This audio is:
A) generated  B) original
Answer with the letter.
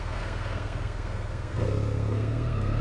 A